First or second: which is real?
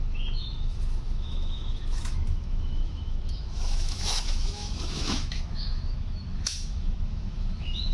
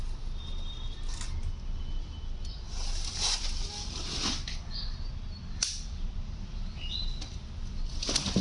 second